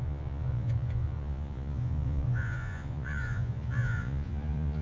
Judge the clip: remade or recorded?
remade